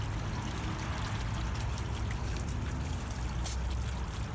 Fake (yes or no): no